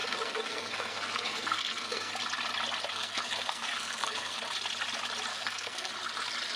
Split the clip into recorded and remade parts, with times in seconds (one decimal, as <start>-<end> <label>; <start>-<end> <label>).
0.0-2.1 remade; 2.1-2.9 recorded; 2.9-4.4 remade; 4.4-5.3 recorded; 5.3-5.9 remade; 5.9-6.6 recorded